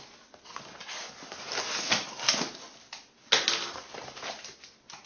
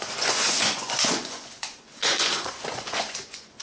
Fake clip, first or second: second